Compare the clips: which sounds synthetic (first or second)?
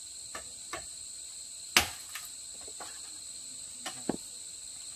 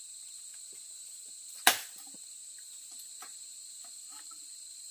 second